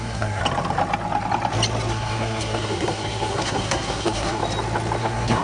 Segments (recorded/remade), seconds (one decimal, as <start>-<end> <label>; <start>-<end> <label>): 0.0-0.4 remade; 0.4-1.9 recorded; 1.9-4.4 remade; 4.4-5.0 recorded; 5.0-5.4 remade